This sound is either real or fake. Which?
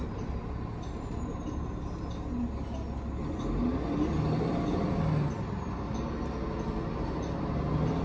real